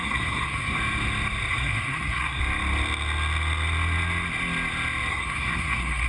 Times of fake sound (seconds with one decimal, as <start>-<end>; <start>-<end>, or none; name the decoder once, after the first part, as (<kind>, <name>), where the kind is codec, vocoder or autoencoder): 0.0-0.8 (codec, SNAC); 1.5-2.4; 5.1-6.1